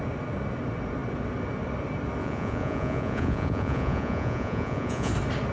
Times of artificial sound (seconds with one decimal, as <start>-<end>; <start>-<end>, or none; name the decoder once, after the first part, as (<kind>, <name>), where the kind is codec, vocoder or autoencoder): 2.2-5.1 (vocoder, Vocos)